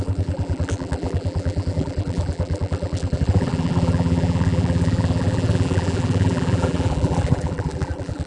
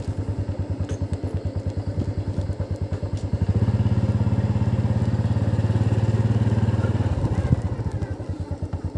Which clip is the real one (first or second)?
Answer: second